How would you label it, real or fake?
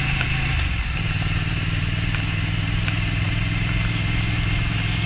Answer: fake